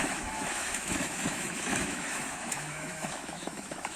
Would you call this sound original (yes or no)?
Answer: no